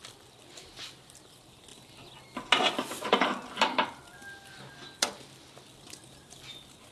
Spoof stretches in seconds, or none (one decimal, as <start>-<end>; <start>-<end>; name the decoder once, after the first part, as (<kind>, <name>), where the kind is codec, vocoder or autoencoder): none